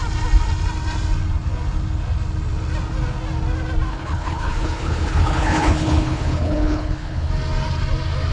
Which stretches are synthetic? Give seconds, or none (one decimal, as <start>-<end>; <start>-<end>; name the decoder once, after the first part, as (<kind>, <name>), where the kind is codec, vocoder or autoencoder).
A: 3.9-7.3 (codec, HILCodec)